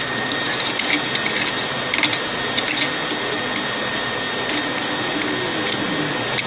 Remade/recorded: recorded